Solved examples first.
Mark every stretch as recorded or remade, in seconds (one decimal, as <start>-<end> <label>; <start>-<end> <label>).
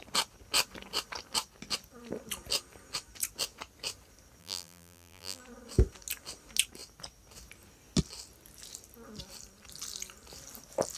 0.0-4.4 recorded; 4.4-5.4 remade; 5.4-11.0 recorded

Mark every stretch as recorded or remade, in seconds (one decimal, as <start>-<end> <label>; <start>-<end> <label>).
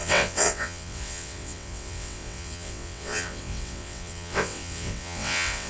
0.0-5.7 remade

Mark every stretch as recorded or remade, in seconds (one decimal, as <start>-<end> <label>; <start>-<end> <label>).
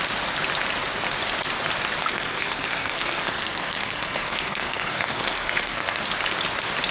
0.0-2.0 recorded; 2.0-6.0 remade; 6.0-6.9 recorded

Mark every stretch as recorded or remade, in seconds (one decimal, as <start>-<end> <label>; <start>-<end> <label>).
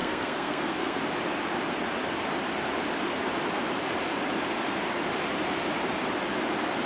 0.0-1.0 remade; 1.0-6.9 recorded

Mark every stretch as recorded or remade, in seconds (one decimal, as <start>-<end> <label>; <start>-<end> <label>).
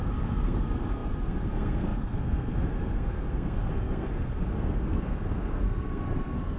0.0-6.6 remade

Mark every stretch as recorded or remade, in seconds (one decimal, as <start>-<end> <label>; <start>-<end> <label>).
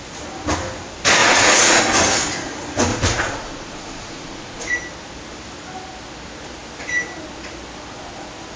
0.0-1.2 recorded; 1.2-1.8 remade; 1.8-2.9 recorded; 2.9-4.7 remade; 4.7-8.6 recorded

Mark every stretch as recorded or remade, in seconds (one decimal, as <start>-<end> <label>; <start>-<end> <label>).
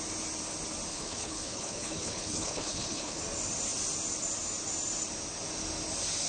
0.0-0.9 recorded; 0.9-3.2 remade; 3.2-6.3 recorded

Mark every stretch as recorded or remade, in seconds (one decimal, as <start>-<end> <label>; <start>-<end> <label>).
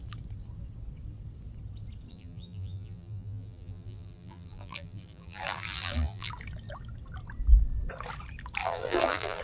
0.0-2.1 recorded; 2.1-6.3 remade; 6.3-8.6 recorded; 8.6-9.4 remade